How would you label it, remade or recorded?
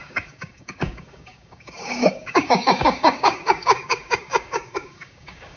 remade